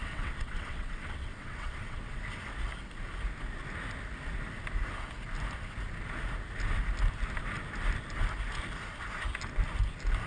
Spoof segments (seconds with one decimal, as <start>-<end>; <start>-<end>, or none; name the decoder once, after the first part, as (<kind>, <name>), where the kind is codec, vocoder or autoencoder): 0.0-2.2 (vocoder, WaveNeXt)